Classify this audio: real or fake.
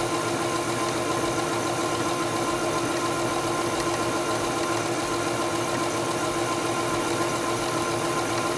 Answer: real